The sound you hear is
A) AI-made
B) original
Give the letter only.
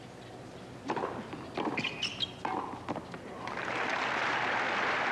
B